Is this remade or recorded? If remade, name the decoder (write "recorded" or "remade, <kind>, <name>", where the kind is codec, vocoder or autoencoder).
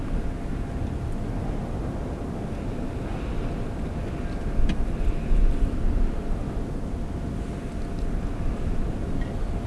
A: recorded